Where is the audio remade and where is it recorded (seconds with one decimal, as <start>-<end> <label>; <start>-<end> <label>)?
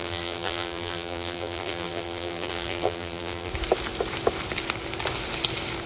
0.0-3.5 remade; 3.5-5.9 recorded